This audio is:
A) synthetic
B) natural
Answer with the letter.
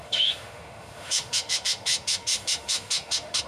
A